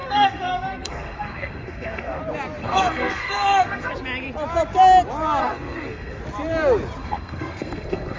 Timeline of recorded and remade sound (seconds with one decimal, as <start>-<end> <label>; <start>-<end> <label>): 0.0-2.2 remade; 2.2-2.6 recorded; 2.6-3.9 remade; 3.9-5.4 recorded; 5.4-6.2 remade; 6.2-7.0 recorded; 7.0-8.2 remade